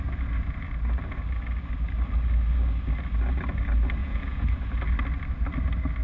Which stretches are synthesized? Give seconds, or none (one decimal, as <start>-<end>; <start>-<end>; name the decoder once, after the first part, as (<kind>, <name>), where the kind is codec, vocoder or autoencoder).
4.0-4.5 (vocoder, Vocos)